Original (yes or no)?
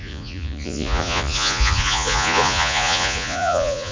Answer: no